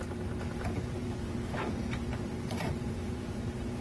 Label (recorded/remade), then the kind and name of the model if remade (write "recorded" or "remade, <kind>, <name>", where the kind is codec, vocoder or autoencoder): remade, vocoder, BigVGAN v2